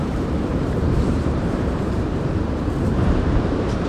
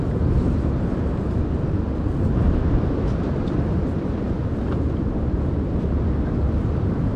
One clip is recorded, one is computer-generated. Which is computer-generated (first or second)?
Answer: first